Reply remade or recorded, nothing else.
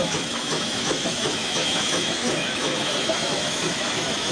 remade